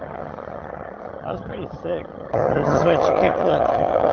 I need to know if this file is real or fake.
fake